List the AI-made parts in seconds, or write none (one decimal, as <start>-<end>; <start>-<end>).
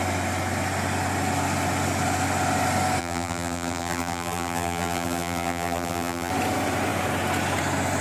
3.0-6.3